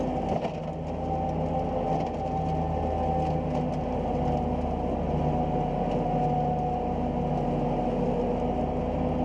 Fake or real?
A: real